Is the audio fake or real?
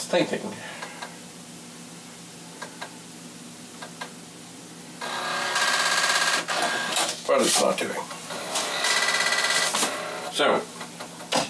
real